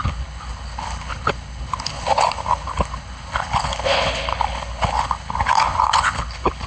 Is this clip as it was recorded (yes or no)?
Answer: no